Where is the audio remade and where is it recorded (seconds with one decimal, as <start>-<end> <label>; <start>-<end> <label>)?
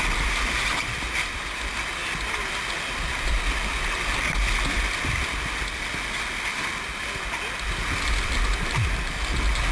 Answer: 0.0-9.7 recorded